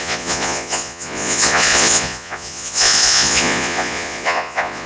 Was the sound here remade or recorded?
remade